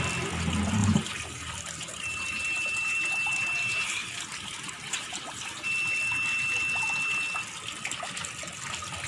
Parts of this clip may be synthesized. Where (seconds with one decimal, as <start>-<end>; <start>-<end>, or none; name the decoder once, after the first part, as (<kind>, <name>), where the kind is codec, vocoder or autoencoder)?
0.8-5.7 (vocoder, BigVGAN v2)